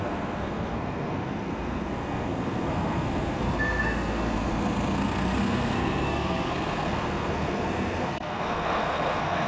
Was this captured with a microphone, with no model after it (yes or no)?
no